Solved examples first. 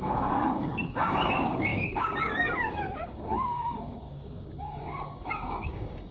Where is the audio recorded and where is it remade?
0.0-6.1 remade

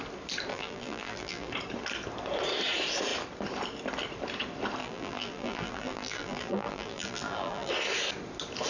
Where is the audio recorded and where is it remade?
0.0-0.5 recorded; 0.5-1.5 remade; 1.5-4.8 recorded; 4.8-7.7 remade; 7.7-8.7 recorded

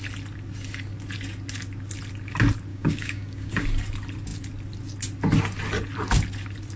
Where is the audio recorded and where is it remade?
0.0-2.7 recorded; 2.7-3.5 remade; 3.5-6.8 recorded

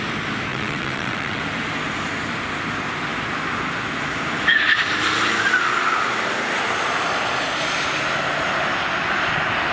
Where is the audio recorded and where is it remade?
0.0-0.5 recorded; 0.5-1.4 remade; 1.4-9.7 recorded

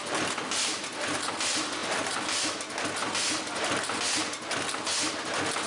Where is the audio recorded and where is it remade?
0.0-5.7 recorded

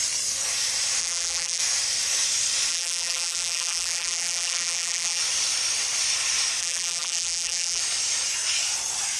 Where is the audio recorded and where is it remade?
0.0-1.0 recorded; 1.0-1.6 remade; 1.6-2.7 recorded; 2.7-5.2 remade; 5.2-6.6 recorded; 6.6-7.8 remade; 7.8-9.2 recorded

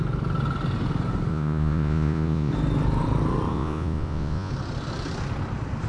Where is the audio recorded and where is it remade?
0.0-1.3 recorded; 1.3-2.5 remade; 2.5-3.5 recorded; 3.5-4.5 remade; 4.5-5.9 recorded